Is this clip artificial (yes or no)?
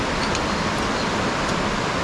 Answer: no